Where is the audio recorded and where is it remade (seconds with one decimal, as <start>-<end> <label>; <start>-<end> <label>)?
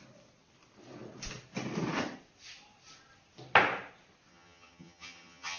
0.0-4.3 recorded; 4.3-5.6 remade